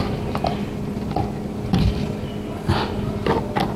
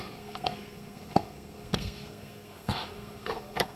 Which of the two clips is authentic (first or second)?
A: first